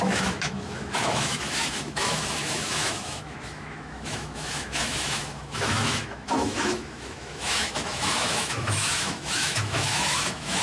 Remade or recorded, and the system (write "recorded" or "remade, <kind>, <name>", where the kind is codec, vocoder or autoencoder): remade, autoencoder, DAC-VAE